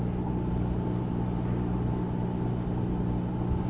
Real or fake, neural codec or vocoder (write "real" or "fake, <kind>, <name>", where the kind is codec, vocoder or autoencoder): real